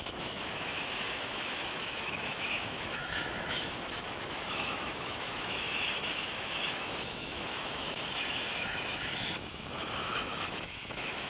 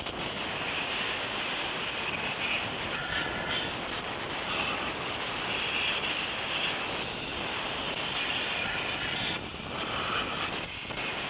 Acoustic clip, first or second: second